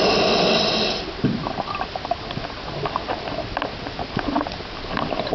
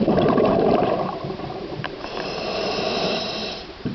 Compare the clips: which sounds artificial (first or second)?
second